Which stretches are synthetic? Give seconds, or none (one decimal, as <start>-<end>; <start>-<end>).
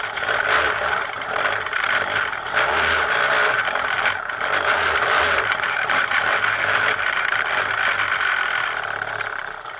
3.4-7.5